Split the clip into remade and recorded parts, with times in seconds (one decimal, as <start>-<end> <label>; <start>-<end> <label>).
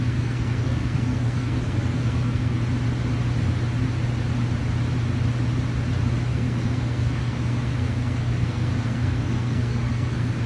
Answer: 0.0-2.6 remade; 2.6-6.3 recorded; 6.3-10.5 remade